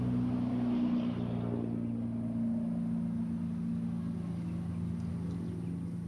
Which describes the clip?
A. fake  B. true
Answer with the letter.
B